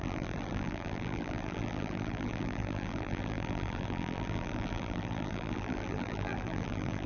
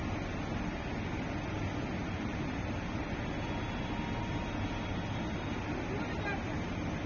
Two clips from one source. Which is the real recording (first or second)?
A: second